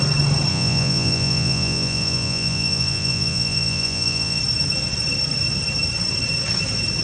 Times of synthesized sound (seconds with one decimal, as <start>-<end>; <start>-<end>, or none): 0.5-4.4